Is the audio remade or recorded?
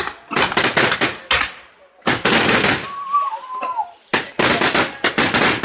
recorded